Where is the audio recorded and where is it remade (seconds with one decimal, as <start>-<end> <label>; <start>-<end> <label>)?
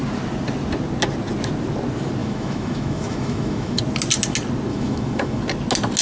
0.0-2.2 recorded; 2.2-3.8 remade; 3.8-4.7 recorded; 4.7-5.4 remade; 5.4-6.0 recorded